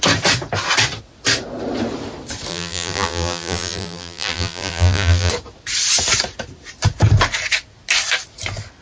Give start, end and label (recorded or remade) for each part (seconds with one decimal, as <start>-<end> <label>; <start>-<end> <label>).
0.0-2.5 recorded; 2.5-5.3 remade; 5.3-8.8 recorded